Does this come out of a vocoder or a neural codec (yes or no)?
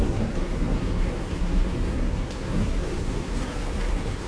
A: yes